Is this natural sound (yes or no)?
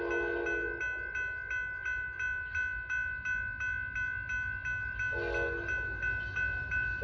yes